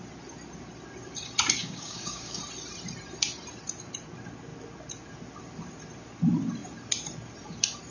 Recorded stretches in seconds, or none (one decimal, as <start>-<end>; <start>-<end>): 0.0-1.6; 2.4-7.9